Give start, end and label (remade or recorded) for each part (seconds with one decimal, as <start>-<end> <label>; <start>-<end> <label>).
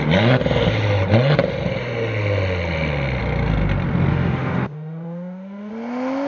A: 0.0-4.1 recorded; 4.1-5.7 remade; 5.7-6.3 recorded